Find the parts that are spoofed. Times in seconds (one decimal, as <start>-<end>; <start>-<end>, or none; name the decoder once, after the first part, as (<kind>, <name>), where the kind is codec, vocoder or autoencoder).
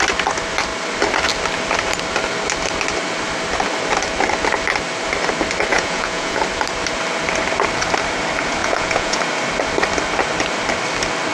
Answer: 5.7-6.4 (vocoder, Vocos); 8.6-9.2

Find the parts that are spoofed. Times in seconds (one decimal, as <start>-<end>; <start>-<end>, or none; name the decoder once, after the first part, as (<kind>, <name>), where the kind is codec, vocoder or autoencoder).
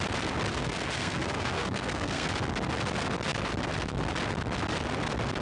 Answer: 0.5-2.3 (codec, SNAC)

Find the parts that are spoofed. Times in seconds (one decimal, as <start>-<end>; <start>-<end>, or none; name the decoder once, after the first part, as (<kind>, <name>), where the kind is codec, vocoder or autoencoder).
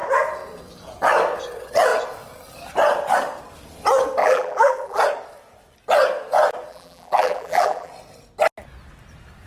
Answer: 4.2-5.0 (vocoder, BigVGAN v2); 6.7-7.9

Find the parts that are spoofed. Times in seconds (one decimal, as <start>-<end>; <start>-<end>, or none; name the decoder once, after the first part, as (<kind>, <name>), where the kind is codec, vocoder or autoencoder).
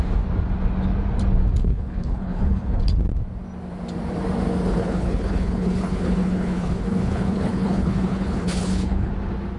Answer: 1.6-2.8 (codec, HILCodec); 4.7-9.1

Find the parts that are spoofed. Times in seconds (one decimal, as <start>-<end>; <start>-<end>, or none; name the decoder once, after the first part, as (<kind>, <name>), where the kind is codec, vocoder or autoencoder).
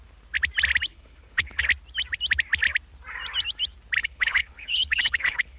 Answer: 0.9-1.6 (codec, HILCodec); 4.0-5.6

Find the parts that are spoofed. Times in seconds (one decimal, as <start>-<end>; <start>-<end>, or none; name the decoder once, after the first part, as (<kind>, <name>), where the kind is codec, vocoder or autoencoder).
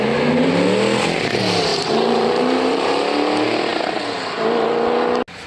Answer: 1.7-3.0 (vocoder, BigVGAN v2)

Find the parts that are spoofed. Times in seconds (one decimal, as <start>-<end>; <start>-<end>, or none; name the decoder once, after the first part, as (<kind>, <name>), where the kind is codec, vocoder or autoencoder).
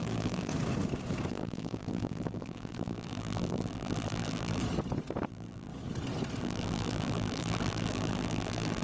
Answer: 0.0-0.5 (vocoder, BigVGAN v2); 1.3-4.6; 5.3-5.7; 6.4-8.8